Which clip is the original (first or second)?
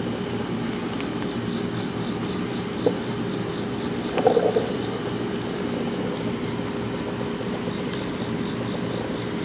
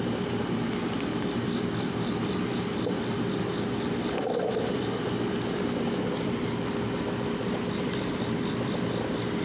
first